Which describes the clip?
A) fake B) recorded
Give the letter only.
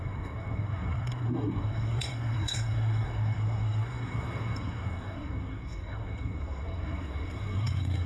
A